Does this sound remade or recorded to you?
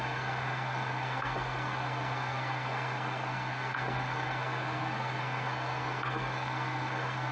remade